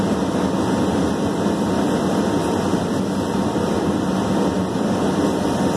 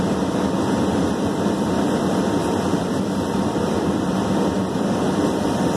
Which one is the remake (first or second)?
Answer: second